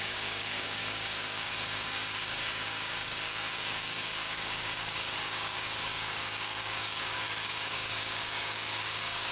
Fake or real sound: fake